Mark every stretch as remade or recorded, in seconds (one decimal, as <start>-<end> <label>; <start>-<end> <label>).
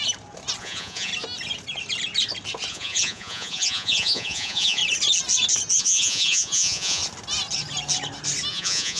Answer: 0.0-0.6 recorded; 0.6-1.1 remade; 1.1-2.7 recorded; 2.7-4.8 remade; 4.8-5.8 recorded; 5.8-7.0 remade; 7.0-8.5 recorded; 8.5-9.0 remade